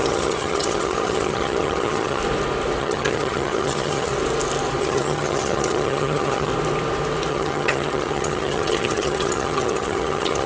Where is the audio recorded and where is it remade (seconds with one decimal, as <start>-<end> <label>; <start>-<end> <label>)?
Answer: 0.0-2.2 remade; 2.2-2.8 recorded; 2.8-4.1 remade; 4.1-4.8 recorded; 4.8-6.5 remade; 6.5-7.3 recorded; 7.3-10.5 remade